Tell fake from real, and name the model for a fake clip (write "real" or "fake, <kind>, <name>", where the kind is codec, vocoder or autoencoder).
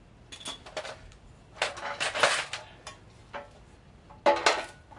real